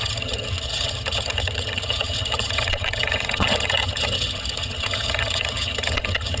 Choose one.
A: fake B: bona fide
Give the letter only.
A